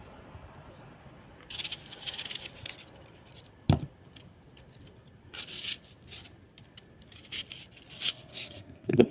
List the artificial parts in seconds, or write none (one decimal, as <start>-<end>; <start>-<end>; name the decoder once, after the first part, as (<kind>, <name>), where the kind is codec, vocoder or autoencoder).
8.3-9.1 (codec, SNAC)